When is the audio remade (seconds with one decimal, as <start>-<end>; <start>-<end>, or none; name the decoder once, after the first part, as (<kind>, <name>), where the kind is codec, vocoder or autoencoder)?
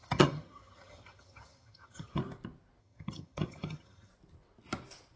0.0-2.2 (vocoder, HiFi-GAN); 2.8-4.1